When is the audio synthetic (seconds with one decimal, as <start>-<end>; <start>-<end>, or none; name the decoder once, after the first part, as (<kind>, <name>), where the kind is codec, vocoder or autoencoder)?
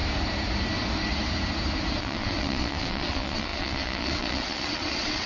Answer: 2.0-5.3 (vocoder, WaveNeXt)